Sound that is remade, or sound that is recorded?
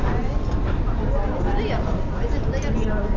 recorded